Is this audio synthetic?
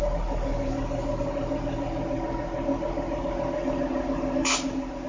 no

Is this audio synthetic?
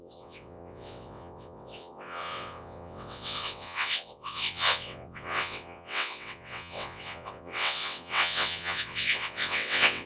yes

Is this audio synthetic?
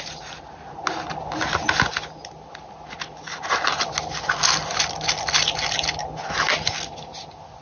no